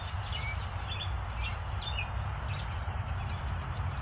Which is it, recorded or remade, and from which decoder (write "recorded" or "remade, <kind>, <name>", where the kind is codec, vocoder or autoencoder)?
recorded